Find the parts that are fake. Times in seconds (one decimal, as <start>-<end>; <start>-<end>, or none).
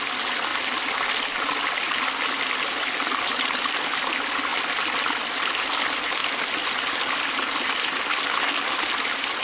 none